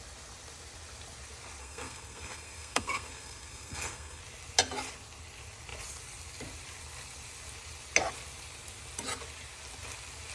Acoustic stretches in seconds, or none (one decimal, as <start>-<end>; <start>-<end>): 0.0-1.6; 4.2-10.3